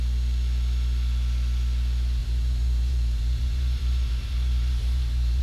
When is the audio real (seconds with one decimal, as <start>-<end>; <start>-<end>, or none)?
0.0-2.2